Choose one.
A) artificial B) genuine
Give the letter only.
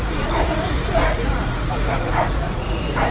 A